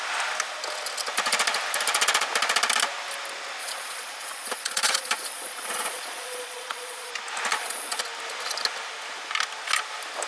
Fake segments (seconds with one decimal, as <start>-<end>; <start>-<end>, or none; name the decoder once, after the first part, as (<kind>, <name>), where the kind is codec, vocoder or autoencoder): 3.6-7.1 (vocoder, Vocos); 7.5-8.0